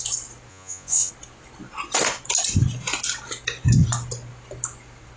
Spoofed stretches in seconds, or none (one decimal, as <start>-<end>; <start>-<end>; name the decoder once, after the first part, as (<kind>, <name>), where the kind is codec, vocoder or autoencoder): 0.5-1.1 (vocoder, Vocos)